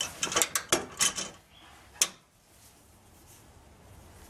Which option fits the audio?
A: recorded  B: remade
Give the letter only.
A